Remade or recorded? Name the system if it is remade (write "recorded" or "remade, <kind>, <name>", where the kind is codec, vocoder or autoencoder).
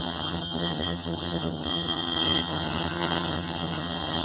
remade, vocoder, HiFi-GAN